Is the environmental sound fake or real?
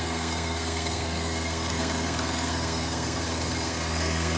fake